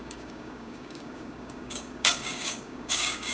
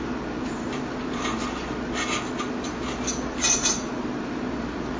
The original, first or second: second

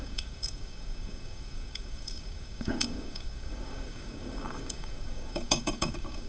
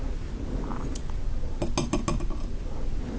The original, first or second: second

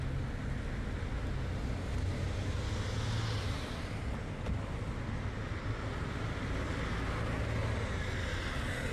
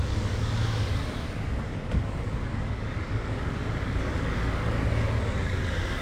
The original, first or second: first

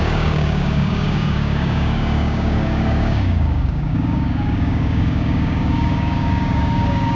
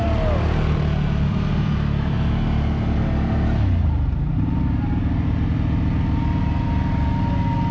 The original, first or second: second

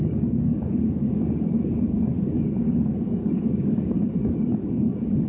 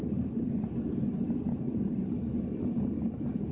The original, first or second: second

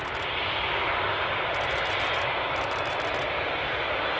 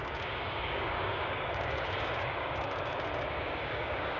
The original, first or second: first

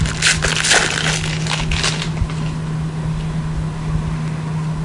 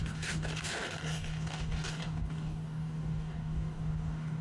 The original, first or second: first